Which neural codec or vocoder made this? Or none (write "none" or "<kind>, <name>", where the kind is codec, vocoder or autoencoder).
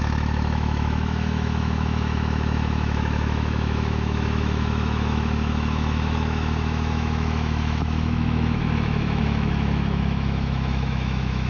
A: autoencoder, DAC-VAE